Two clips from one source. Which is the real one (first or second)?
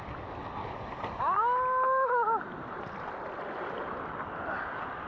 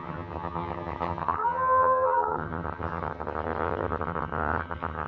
first